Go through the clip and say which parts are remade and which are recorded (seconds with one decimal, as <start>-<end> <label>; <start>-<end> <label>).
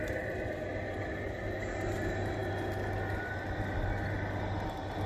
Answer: 0.0-5.1 recorded